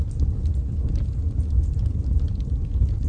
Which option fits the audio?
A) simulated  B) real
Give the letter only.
B